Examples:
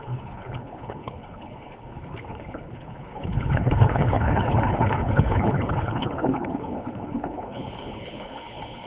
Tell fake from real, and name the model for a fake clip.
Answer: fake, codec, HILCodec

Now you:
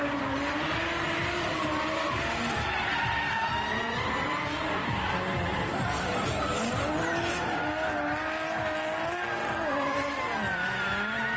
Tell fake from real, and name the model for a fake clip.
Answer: real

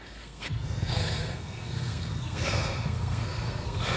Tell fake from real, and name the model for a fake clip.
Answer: fake, codec, SNAC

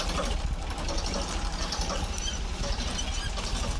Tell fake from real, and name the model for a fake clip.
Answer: real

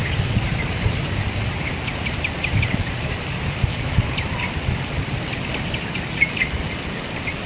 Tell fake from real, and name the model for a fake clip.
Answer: real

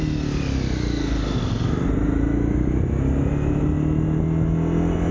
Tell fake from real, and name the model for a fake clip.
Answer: real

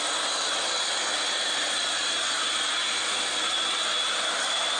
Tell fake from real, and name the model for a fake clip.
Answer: real